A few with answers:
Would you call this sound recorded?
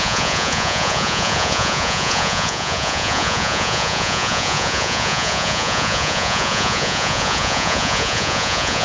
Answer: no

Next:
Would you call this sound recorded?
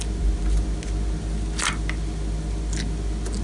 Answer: yes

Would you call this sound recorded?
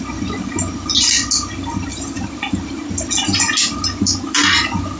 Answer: yes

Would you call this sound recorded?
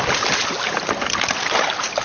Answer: yes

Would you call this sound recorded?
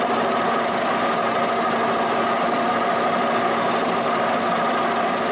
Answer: yes